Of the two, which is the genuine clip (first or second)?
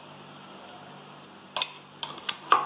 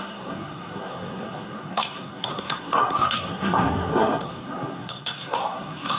first